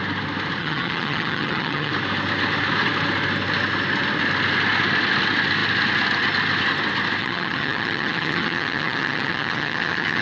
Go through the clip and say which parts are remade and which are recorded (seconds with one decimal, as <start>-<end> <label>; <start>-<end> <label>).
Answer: 0.0-0.6 recorded; 0.6-1.9 remade; 1.9-7.2 recorded; 7.2-10.2 remade